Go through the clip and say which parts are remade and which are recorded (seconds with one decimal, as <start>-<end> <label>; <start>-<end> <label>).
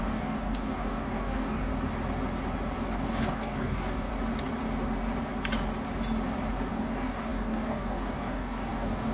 0.0-1.7 remade; 1.7-2.8 recorded; 2.8-4.1 remade; 4.1-6.7 recorded; 6.7-9.1 remade